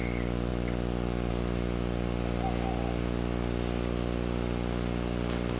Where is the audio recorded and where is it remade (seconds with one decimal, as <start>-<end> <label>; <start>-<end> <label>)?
0.0-5.6 recorded

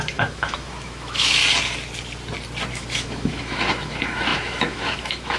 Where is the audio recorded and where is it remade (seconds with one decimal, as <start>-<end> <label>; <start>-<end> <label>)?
0.0-1.4 remade; 1.4-2.7 recorded; 2.7-5.4 remade

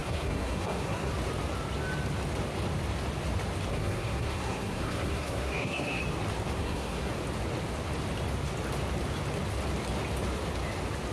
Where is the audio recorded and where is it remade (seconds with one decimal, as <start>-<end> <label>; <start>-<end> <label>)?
0.0-1.1 remade; 1.1-3.7 recorded; 3.7-6.0 remade; 6.0-6.6 recorded; 6.6-7.1 remade; 7.1-11.1 recorded

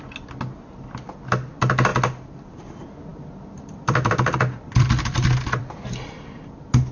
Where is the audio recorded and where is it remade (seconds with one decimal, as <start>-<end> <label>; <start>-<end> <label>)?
0.0-3.1 recorded; 3.1-6.4 remade; 6.4-6.9 recorded

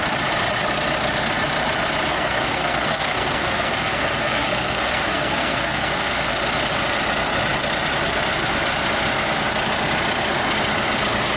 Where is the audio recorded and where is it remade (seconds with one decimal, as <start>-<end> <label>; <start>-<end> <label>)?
0.0-2.1 recorded; 2.1-6.3 remade; 6.3-11.4 recorded